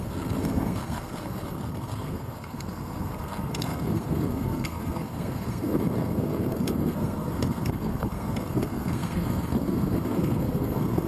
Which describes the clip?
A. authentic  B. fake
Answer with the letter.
B